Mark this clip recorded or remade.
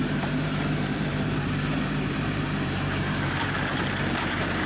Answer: remade